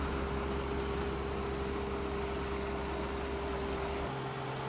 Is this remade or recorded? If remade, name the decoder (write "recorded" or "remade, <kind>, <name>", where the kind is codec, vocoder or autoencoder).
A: recorded